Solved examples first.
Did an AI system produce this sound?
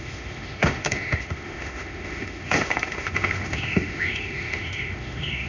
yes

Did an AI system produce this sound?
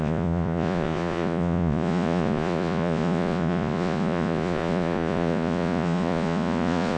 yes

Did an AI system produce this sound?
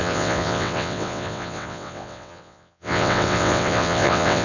yes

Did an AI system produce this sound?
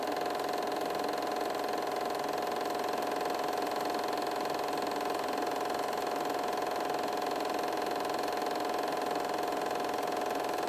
no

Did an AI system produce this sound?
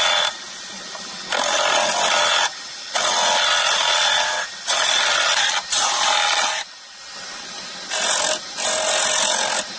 no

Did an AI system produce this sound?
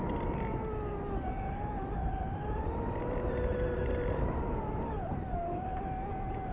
no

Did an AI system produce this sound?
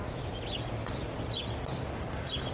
no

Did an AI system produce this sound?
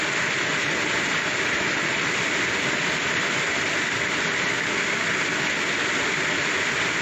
no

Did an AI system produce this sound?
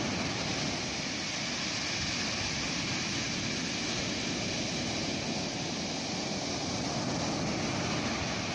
no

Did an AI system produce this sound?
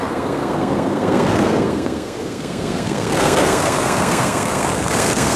yes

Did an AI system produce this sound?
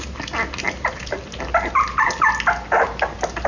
no